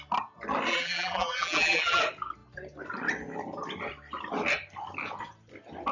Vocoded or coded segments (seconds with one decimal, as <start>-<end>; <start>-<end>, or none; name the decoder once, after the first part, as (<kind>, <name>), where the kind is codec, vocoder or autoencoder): 0.7-2.0 (vocoder, BigVGAN v2)